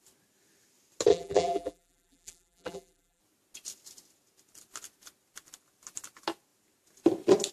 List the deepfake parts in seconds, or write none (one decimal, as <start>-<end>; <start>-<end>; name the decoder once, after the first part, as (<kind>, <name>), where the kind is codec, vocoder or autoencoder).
1.1-3.2 (vocoder, BigVGAN v2)